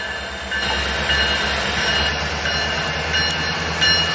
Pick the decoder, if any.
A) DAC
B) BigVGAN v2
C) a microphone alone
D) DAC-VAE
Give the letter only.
C